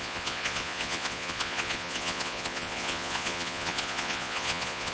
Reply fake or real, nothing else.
fake